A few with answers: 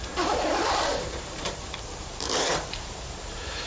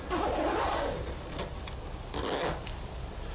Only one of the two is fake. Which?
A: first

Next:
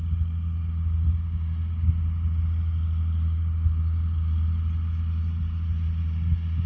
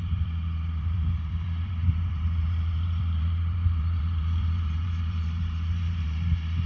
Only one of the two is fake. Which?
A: second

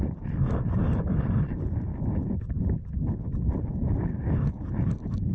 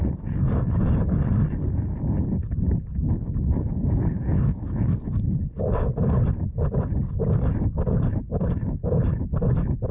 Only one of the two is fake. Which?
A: first